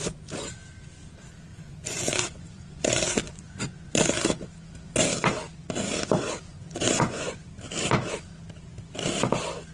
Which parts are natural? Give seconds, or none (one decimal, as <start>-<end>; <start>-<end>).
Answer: 0.0-1.5; 4.0-6.5; 7.5-9.7